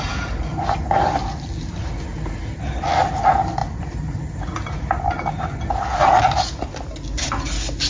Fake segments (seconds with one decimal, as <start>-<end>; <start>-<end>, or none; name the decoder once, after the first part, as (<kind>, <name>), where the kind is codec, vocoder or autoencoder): none